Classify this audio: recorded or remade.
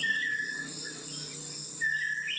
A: recorded